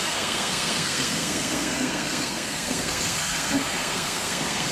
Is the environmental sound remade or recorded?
remade